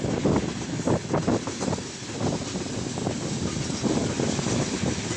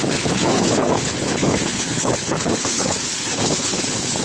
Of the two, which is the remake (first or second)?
second